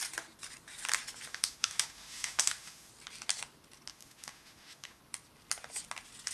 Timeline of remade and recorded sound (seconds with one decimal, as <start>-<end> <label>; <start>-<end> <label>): 0.0-1.3 recorded; 1.3-2.9 remade; 2.9-3.9 recorded; 3.9-5.0 remade; 5.0-6.3 recorded